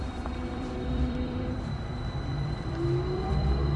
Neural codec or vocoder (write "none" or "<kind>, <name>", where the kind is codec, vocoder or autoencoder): vocoder, BigVGAN v2